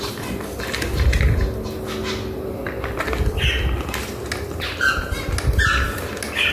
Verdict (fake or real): real